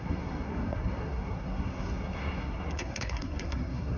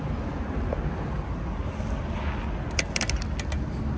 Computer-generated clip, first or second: first